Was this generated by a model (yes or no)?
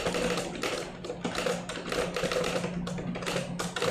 no